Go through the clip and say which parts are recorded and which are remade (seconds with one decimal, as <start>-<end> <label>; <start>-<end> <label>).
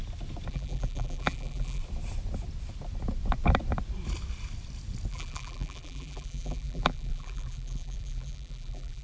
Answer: 0.0-0.5 recorded; 0.5-1.8 remade; 1.8-5.1 recorded; 5.1-9.0 remade